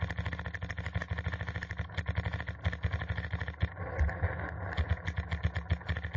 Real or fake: real